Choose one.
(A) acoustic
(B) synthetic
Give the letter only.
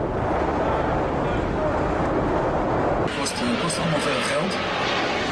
A